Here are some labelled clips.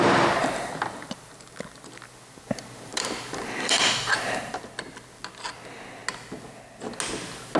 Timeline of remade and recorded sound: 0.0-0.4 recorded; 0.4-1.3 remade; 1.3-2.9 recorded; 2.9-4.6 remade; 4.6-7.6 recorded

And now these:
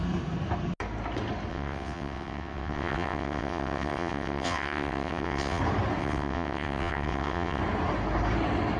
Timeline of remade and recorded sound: 0.0-1.5 recorded; 1.5-5.6 remade; 5.6-6.0 recorded; 6.0-7.6 remade; 7.6-8.8 recorded

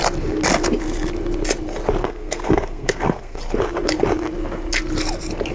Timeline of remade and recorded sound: 0.0-2.0 recorded; 2.0-3.4 remade; 3.4-5.5 recorded

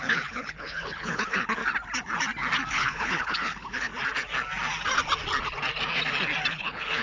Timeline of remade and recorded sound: 0.0-1.6 remade; 1.6-2.7 recorded; 2.7-3.9 remade; 3.9-6.5 recorded; 6.5-7.0 remade

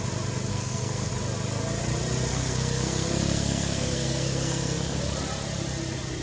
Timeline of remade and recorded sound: 0.0-0.5 recorded; 0.5-1.1 remade; 1.1-2.3 recorded; 2.3-5.0 remade; 5.0-6.2 recorded

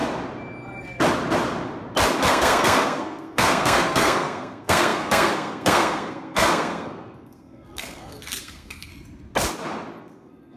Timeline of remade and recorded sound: 0.0-2.3 recorded; 2.3-8.9 remade; 8.9-10.0 recorded; 10.0-10.6 remade

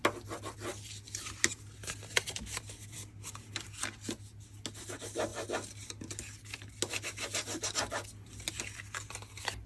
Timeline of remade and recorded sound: 0.0-9.7 recorded